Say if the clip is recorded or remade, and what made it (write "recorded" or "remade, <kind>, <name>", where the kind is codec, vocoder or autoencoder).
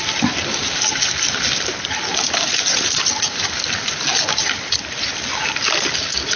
recorded